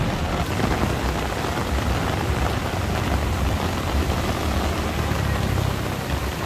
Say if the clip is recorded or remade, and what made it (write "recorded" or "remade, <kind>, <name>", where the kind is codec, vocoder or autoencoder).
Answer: recorded